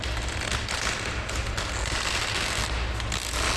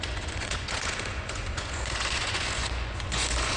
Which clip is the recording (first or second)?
first